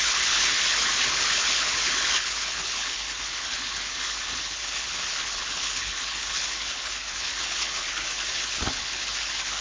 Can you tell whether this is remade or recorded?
remade